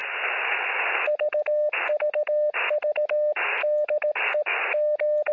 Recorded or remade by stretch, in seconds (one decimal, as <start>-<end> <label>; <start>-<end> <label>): 0.0-5.3 recorded